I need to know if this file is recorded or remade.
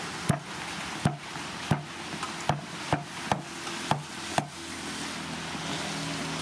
recorded